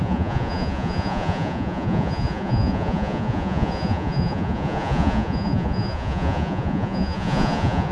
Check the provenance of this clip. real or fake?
fake